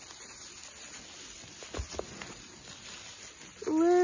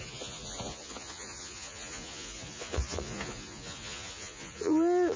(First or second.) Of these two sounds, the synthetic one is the second